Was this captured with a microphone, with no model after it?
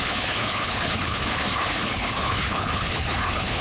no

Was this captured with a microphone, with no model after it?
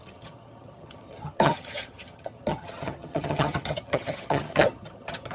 no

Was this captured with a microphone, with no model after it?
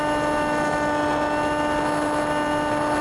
yes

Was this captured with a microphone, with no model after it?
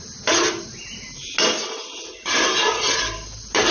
yes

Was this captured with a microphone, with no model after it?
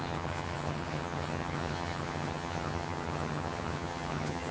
no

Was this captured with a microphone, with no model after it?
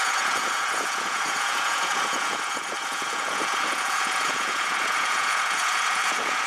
no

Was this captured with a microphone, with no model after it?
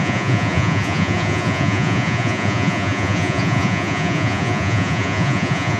no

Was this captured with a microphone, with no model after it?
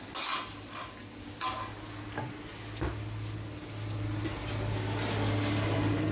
yes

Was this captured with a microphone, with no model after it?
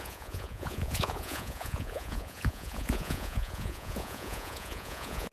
no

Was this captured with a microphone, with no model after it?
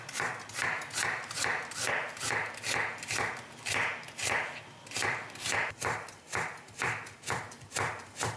yes